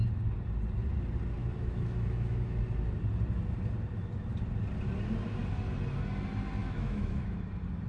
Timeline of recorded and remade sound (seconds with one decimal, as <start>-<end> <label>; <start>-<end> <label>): 0.0-1.4 recorded; 1.4-2.6 remade; 2.6-6.6 recorded; 6.6-7.4 remade; 7.4-7.9 recorded